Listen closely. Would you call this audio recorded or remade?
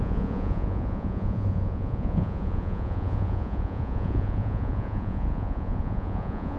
remade